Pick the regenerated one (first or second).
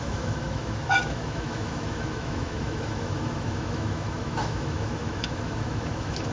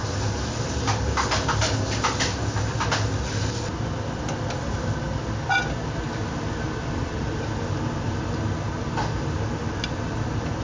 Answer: first